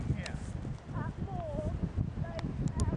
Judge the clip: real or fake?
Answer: real